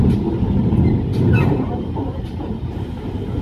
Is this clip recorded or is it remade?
remade